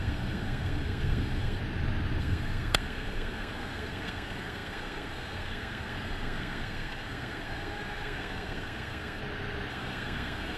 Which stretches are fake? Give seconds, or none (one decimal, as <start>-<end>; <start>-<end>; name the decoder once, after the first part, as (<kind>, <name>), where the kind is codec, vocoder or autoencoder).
0.0-1.6 (codec, SNAC); 2.2-9.2; 9.7-10.6